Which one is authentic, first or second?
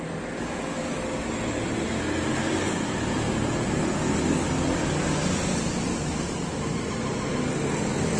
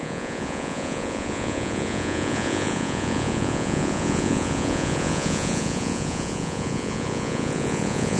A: first